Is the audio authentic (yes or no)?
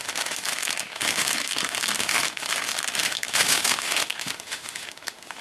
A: no